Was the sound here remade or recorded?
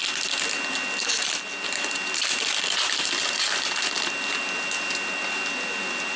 recorded